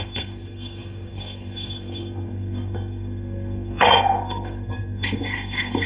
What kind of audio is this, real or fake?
fake